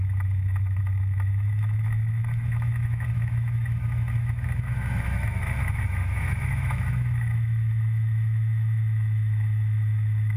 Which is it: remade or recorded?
remade